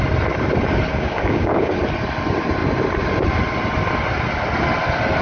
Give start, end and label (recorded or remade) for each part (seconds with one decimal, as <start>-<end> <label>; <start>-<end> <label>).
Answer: 0.0-0.9 recorded; 0.9-1.7 remade; 1.7-5.2 recorded